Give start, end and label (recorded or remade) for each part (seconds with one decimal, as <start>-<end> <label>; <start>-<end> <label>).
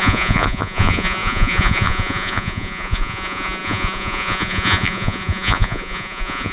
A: 0.0-6.5 remade